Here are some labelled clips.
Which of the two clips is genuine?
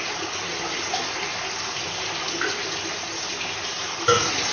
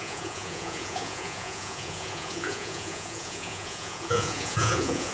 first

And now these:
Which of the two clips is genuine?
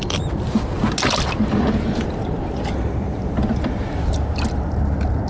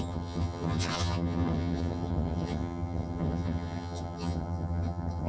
first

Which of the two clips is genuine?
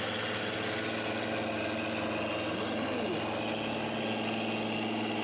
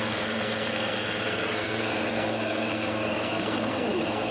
first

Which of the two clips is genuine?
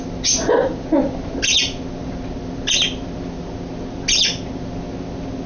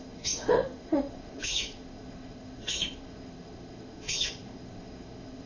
first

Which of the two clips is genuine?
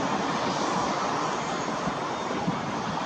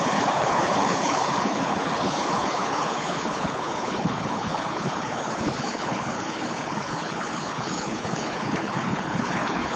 first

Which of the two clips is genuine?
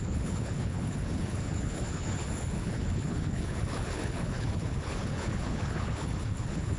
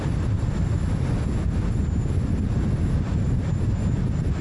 second